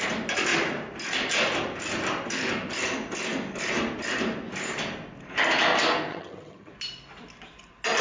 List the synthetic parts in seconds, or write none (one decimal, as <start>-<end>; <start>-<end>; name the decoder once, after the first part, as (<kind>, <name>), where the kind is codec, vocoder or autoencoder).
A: 6.1-6.7 (vocoder, HiFi-GAN)